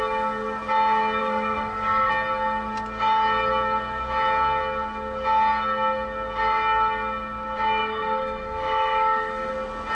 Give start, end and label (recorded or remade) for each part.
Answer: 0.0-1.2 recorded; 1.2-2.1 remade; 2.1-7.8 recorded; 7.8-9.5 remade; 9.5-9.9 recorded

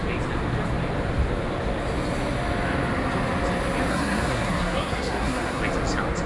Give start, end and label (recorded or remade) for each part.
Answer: 0.0-3.9 recorded; 3.9-5.6 remade; 5.6-6.3 recorded

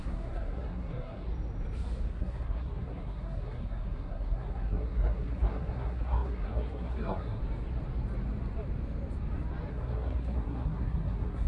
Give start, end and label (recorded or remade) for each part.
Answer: 0.0-1.3 remade; 1.3-2.1 recorded; 2.1-7.4 remade; 7.4-9.7 recorded; 9.7-11.5 remade